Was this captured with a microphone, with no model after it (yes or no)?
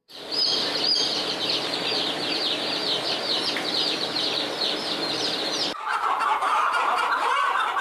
no